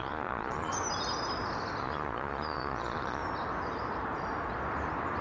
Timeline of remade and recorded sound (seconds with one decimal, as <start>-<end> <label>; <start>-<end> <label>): 0.0-0.7 remade; 0.7-1.8 recorded; 1.8-3.2 remade; 3.2-5.2 recorded